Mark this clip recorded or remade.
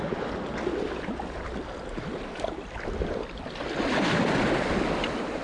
recorded